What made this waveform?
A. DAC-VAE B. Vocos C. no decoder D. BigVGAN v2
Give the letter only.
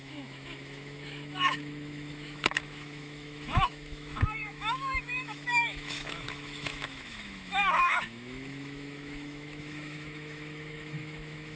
A